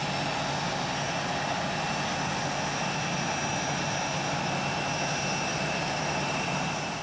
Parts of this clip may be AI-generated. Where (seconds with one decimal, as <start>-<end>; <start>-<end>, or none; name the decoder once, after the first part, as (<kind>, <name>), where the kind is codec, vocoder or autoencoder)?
5.5-7.0 (vocoder, BigVGAN v2)